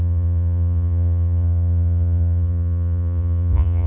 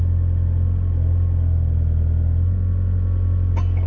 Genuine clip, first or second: second